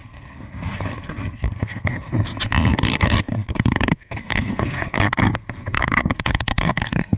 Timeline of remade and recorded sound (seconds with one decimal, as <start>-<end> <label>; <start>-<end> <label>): 0.0-2.1 remade; 2.1-2.7 recorded; 2.7-7.2 remade